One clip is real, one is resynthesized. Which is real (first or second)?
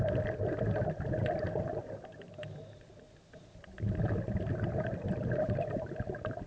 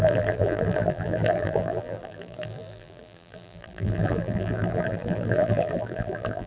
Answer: first